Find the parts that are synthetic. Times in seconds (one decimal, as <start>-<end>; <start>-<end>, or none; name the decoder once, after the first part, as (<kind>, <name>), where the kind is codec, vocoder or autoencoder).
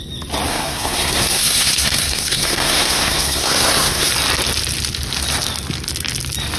0.5-4.1 (codec, SNAC)